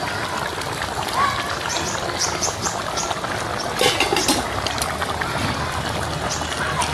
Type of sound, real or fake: real